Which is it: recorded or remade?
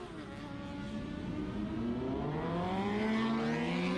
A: recorded